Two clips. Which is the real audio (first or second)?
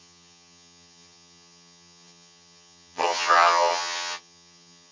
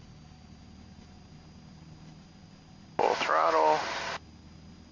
second